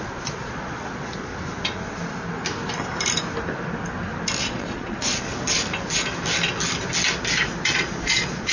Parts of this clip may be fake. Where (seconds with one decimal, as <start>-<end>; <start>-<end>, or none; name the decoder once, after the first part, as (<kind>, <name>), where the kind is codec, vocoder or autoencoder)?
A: 0.0-1.3 (vocoder, Vocos); 4.4-5.3; 7.6-8.5